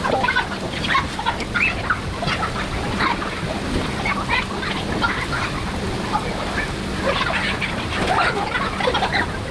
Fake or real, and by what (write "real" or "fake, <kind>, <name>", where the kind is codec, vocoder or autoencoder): real